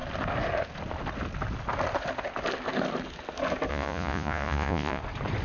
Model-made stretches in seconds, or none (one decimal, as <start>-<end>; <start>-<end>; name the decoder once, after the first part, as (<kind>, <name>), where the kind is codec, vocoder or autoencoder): 3.7-5.0 (vocoder, Vocos)